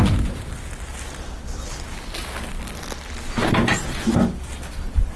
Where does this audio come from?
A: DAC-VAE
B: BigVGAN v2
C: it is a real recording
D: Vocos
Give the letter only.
C